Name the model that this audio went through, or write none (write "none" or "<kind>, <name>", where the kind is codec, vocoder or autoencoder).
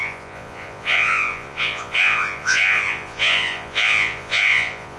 vocoder, Vocos